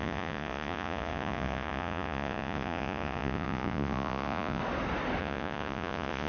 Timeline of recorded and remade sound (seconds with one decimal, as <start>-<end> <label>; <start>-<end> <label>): 0.0-4.6 remade; 4.6-5.2 recorded; 5.2-6.3 remade